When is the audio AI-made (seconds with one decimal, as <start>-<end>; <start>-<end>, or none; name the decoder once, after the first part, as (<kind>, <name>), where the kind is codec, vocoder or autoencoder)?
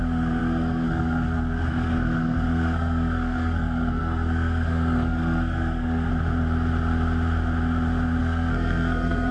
0.0-6.1 (codec, SNAC); 8.2-9.3